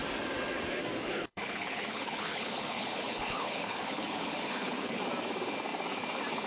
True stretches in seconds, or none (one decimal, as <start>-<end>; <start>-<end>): 0.0-1.1; 5.0-6.5